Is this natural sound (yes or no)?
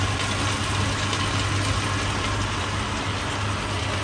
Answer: yes